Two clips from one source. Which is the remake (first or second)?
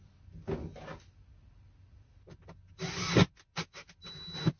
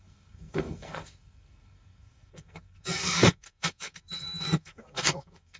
second